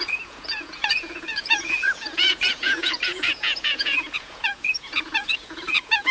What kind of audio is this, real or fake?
fake